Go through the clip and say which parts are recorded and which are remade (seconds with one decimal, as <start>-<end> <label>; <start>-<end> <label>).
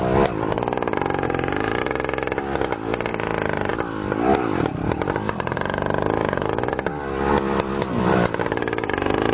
0.0-9.3 recorded